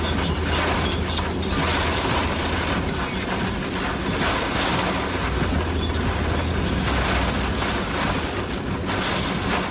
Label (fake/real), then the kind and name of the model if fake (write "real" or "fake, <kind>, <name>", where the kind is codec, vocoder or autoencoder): real